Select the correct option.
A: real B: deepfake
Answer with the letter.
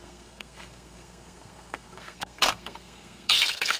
B